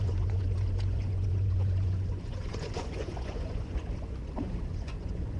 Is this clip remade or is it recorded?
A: remade